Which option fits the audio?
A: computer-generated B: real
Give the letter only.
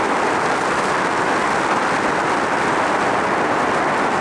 B